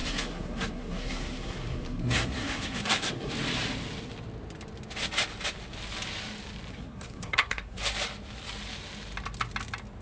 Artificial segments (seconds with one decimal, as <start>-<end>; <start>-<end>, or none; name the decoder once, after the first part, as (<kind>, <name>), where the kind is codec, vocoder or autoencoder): 0.0-3.3 (codec, SNAC); 6.7-7.8